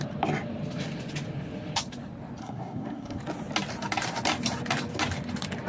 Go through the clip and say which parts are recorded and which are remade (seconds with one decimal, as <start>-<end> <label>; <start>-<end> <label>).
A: 0.0-2.4 recorded; 2.4-3.2 remade; 3.2-5.7 recorded